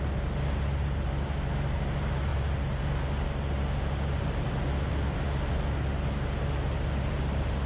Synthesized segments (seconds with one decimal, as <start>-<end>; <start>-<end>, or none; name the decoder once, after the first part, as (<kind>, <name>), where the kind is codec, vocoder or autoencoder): none